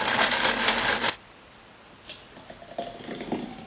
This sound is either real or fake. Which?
real